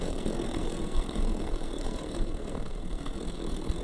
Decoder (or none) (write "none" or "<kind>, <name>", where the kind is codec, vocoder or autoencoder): codec, SNAC